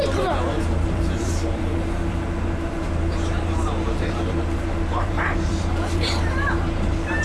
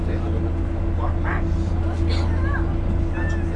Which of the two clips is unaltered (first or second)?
second